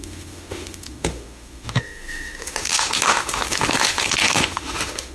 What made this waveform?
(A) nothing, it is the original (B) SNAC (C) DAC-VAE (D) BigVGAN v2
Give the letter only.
C